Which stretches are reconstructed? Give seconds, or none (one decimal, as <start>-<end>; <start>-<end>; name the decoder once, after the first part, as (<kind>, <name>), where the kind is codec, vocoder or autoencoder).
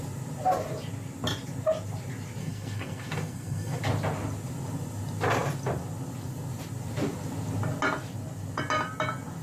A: 2.4-3.8 (codec, SNAC)